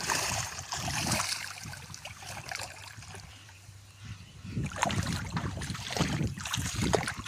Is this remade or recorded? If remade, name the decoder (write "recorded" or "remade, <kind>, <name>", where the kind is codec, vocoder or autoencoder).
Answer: remade, vocoder, BigVGAN v2